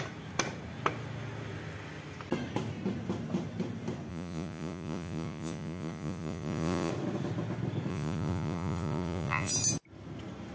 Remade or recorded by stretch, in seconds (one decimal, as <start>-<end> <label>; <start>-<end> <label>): 0.0-4.1 recorded; 4.1-6.9 remade; 6.9-7.9 recorded; 7.9-9.5 remade; 9.5-10.5 recorded

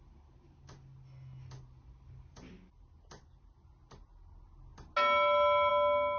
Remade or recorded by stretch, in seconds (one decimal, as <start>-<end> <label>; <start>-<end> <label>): 0.0-6.2 recorded

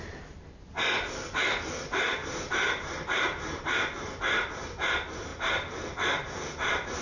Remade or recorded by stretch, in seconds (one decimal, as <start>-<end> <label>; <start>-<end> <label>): 0.0-2.2 recorded; 2.2-3.8 remade; 3.8-5.3 recorded; 5.3-7.0 remade

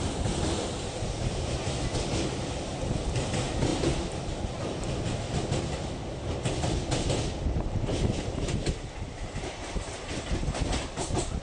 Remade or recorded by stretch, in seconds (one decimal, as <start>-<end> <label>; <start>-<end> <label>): 0.0-11.4 recorded

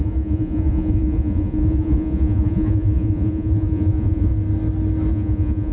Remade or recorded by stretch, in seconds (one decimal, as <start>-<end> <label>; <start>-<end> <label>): 0.0-4.3 remade; 4.3-5.1 recorded; 5.1-5.7 remade

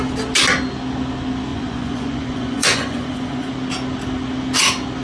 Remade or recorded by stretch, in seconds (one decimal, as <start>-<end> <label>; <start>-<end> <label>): 0.0-1.5 recorded; 1.5-3.5 remade; 3.5-5.0 recorded